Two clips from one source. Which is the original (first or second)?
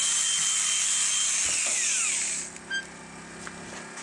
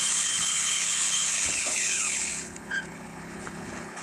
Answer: first